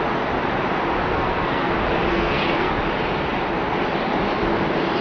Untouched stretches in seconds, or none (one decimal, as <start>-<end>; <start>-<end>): 0.0-1.1; 1.7-2.1; 2.7-5.0